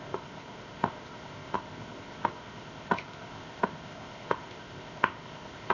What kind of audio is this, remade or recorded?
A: remade